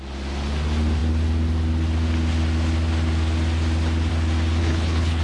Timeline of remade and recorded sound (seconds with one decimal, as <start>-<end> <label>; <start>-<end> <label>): 0.0-4.6 recorded; 4.6-5.2 remade